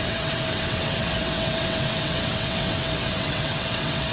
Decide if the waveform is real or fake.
fake